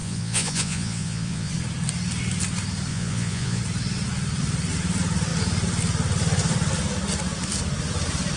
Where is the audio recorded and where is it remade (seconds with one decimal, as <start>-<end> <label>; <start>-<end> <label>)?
0.0-1.5 remade; 1.5-2.9 recorded; 2.9-3.6 remade; 3.6-8.4 recorded